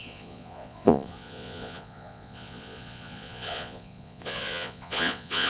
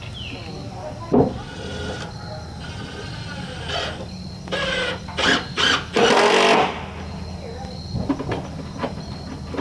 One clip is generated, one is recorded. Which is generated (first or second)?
first